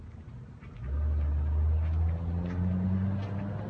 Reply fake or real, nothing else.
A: real